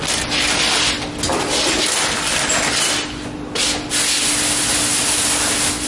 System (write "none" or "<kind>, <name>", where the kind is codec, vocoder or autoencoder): none